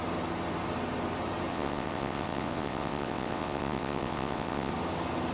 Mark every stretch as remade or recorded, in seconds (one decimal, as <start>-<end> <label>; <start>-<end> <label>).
0.0-1.5 recorded; 1.5-4.7 remade; 4.7-5.3 recorded